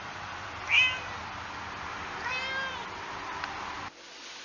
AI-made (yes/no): no